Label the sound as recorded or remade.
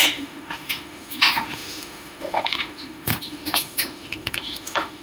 remade